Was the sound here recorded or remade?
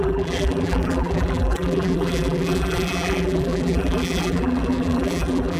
remade